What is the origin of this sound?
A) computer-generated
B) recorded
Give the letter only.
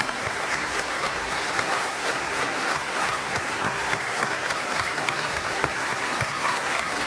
A